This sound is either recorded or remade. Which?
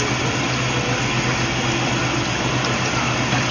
recorded